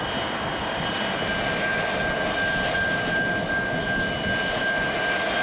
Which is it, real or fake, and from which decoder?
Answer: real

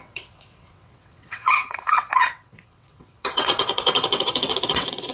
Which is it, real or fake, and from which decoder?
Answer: fake, vocoder, WaveNeXt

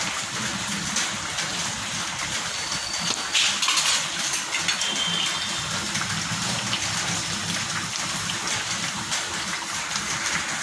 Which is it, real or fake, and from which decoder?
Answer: real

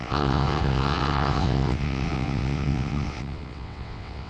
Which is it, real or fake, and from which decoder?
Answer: fake, vocoder, WaveNeXt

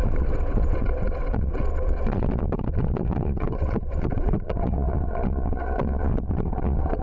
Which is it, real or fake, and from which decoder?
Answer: fake, vocoder, WaveNeXt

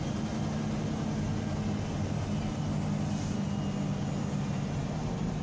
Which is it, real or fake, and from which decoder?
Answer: real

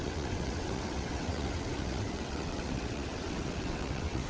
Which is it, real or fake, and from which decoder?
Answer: fake, vocoder, WaveNeXt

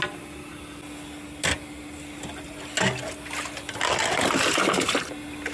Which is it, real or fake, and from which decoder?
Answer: real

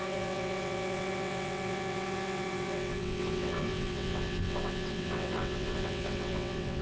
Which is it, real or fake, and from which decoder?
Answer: fake, vocoder, WaveNeXt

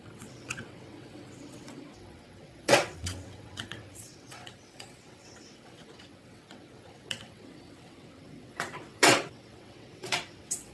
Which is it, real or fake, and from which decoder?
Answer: fake, vocoder, WaveNeXt